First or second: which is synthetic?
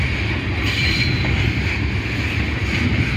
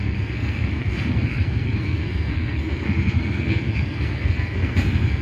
second